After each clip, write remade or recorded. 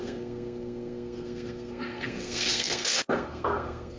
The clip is remade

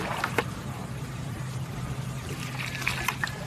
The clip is recorded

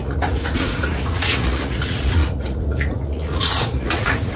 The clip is remade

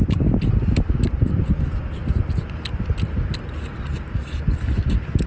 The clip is recorded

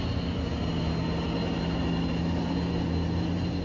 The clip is recorded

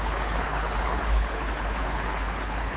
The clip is remade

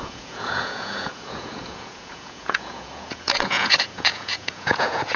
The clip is remade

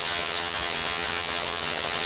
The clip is remade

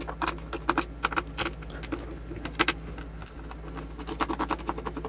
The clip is recorded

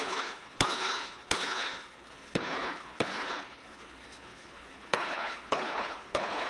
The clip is remade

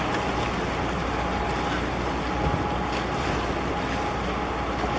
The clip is recorded